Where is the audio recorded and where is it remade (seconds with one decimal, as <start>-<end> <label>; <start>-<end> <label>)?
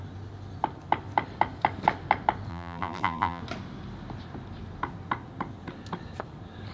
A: 0.0-2.5 recorded; 2.5-3.4 remade; 3.4-6.7 recorded